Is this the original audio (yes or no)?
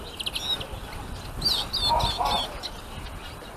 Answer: yes